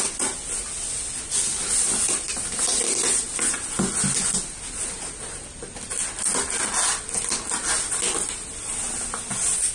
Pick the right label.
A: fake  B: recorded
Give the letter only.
B